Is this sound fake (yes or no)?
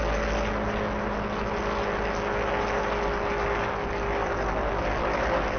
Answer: no